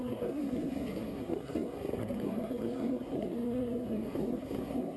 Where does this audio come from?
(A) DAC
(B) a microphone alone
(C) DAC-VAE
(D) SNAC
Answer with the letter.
D